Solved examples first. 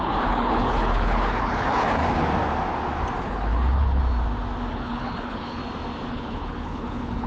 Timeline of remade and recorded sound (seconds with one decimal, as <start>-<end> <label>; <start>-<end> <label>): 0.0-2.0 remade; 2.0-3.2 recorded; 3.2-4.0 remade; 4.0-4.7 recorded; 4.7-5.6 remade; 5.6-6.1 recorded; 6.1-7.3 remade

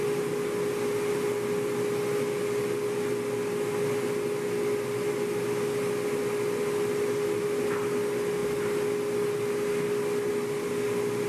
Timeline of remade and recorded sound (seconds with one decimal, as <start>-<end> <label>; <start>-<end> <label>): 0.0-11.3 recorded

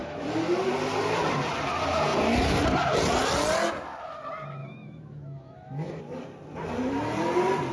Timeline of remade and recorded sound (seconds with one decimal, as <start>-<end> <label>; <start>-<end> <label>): 0.0-0.5 remade; 0.5-4.6 recorded; 4.6-6.0 remade; 6.0-7.7 recorded